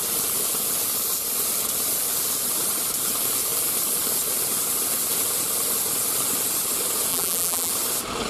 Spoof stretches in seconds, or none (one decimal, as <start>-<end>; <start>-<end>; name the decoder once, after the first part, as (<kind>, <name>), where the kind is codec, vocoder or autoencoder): 7.1-7.7 (vocoder, BigVGAN v2)